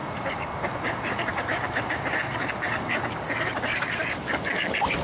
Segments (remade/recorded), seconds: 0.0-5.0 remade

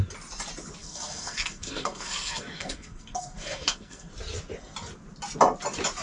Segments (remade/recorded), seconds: 0.0-0.8 recorded; 0.8-4.1 remade; 4.1-6.0 recorded

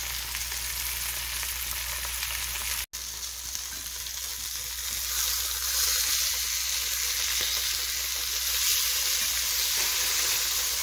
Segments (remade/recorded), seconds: 0.0-10.8 recorded

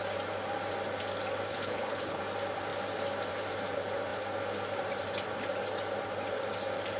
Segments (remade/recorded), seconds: 0.0-1.5 recorded; 1.5-2.2 remade; 2.2-7.0 recorded

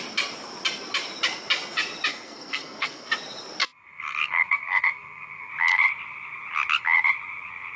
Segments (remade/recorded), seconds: 0.0-2.1 recorded; 2.1-3.1 remade; 3.1-3.6 recorded; 3.6-5.5 remade; 5.5-7.8 recorded

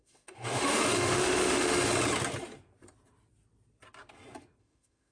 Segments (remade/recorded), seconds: 0.0-1.9 remade; 1.9-4.6 recorded; 4.6-5.1 remade

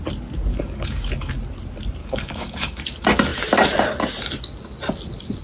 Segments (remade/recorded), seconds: 0.0-0.5 recorded; 0.5-1.3 remade; 1.3-2.0 recorded; 2.0-2.8 remade; 2.8-5.4 recorded

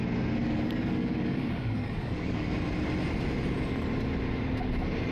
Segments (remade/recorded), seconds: 0.0-0.4 recorded; 0.4-2.5 remade; 2.5-5.1 recorded